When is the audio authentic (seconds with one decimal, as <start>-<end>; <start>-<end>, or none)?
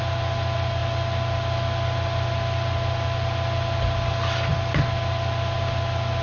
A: 0.0-6.2